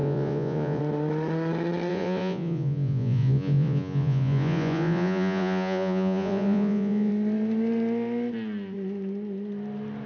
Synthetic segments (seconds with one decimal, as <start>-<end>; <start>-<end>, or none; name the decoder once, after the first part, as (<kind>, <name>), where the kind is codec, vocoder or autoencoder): 0.0-0.8 (vocoder, Vocos); 1.9-7.1